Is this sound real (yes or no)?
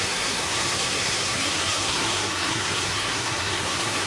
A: no